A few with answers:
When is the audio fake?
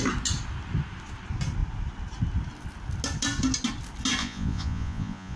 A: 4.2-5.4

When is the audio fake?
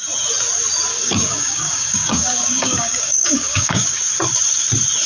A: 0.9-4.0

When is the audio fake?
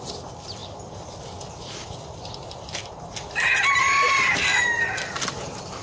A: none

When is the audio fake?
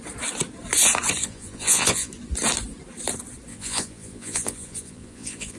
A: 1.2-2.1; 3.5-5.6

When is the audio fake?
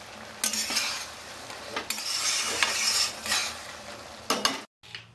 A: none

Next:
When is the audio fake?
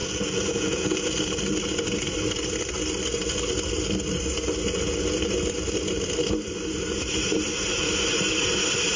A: 0.0-1.2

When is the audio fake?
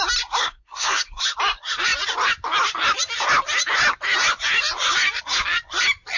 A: 0.4-1.2